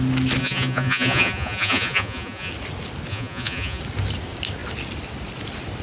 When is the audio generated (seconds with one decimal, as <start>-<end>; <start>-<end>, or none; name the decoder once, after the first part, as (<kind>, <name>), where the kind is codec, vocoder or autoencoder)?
0.4-2.5 (vocoder, Vocos); 3.1-3.8